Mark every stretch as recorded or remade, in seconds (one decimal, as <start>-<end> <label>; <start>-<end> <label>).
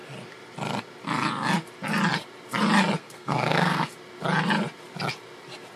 0.0-3.0 recorded; 3.0-3.9 remade; 3.9-5.8 recorded